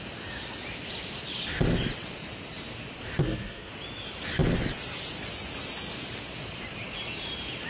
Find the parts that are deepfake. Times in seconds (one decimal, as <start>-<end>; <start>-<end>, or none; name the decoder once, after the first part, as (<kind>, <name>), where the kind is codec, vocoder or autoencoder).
3.2-3.7 (codec, SNAC)